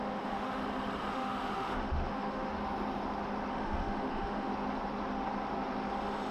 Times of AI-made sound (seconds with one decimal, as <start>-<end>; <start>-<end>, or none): 0.0-0.6; 1.1-2.5; 3.5-4.5